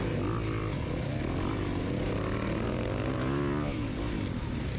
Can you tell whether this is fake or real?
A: real